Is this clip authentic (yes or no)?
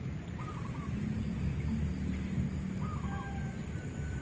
yes